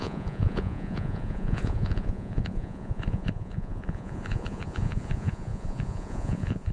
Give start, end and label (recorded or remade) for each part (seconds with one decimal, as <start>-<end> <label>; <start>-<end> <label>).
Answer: 0.0-6.7 remade